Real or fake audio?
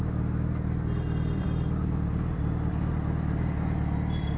real